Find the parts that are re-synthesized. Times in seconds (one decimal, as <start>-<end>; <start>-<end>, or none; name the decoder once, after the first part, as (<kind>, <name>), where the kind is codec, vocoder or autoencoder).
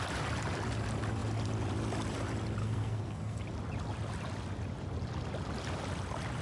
2.6-3.4 (codec, SNAC)